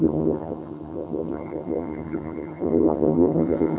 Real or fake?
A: fake